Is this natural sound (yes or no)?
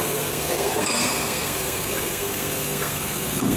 no